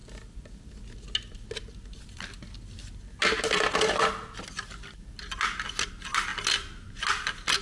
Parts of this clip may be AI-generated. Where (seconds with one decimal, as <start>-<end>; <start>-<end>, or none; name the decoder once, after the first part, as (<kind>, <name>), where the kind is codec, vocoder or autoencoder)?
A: none